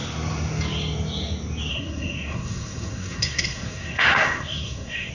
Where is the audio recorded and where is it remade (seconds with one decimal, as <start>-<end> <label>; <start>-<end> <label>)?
0.0-1.7 recorded; 1.7-5.1 remade